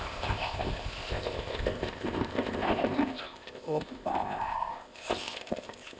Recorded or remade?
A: remade